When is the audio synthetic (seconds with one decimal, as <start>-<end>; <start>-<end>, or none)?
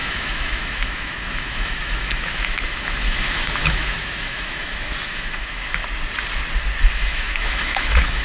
0.0-5.8; 6.9-8.2